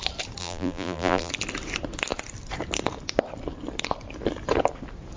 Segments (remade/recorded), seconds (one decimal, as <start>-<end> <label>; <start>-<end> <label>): 0.0-0.4 recorded; 0.4-1.3 remade; 1.3-5.2 recorded